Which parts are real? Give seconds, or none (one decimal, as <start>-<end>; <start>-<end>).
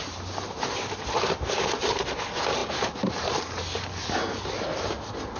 0.0-2.6; 3.3-5.4